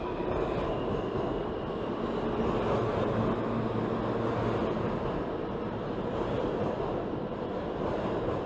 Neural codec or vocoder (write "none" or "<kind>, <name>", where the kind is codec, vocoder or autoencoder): none